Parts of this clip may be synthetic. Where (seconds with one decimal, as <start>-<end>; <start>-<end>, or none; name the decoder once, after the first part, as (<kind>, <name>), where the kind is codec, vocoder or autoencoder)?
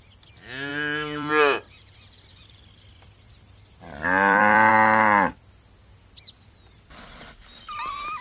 0.7-1.9 (vocoder, BigVGAN v2); 2.3-4.7